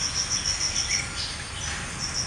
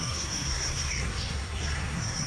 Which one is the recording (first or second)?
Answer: first